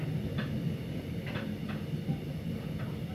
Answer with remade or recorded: recorded